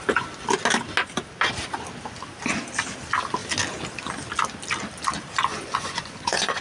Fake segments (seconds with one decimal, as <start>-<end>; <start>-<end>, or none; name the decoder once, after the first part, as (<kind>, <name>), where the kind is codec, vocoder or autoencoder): 5.5-6.6 (vocoder, Vocos)